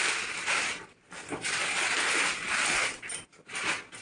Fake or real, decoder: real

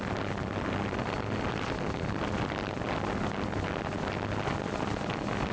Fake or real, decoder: real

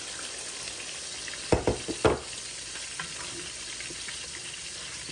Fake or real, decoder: real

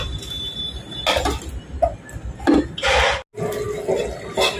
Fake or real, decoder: real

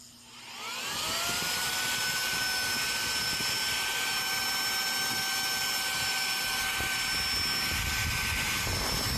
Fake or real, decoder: real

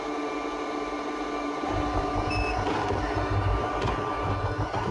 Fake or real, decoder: fake, vocoder, BigVGAN v2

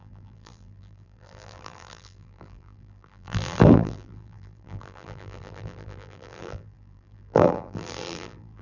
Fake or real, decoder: fake, vocoder, BigVGAN v2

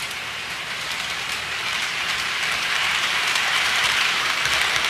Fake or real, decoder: fake, vocoder, BigVGAN v2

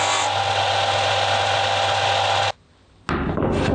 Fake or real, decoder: real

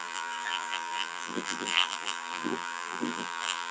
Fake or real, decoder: fake, vocoder, BigVGAN v2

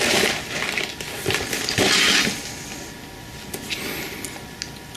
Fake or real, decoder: real